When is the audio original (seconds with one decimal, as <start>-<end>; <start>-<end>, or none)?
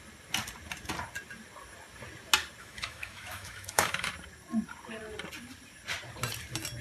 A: 0.0-2.6; 4.1-6.8